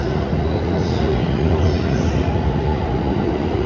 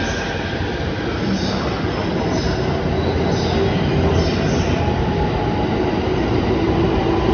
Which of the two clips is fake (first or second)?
first